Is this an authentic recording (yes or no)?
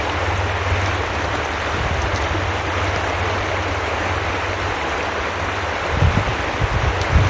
yes